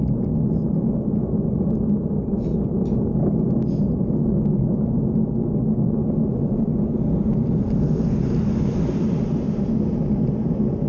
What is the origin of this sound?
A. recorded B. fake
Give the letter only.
A